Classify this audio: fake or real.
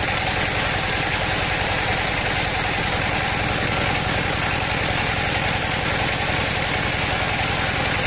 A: real